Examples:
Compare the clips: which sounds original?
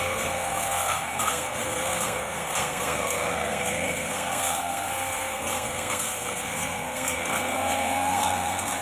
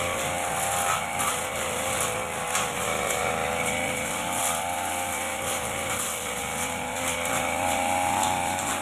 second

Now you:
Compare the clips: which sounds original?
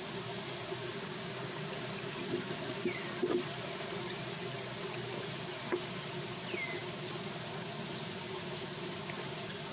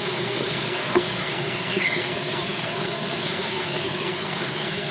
first